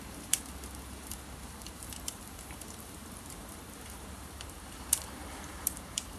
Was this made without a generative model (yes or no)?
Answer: no